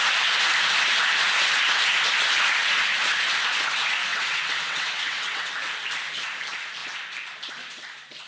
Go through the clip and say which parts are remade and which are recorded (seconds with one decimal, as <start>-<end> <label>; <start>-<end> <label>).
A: 0.0-4.1 recorded; 4.1-5.5 remade; 5.5-8.3 recorded